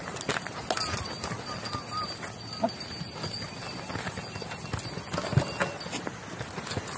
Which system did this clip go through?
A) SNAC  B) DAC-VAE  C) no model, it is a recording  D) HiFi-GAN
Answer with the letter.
C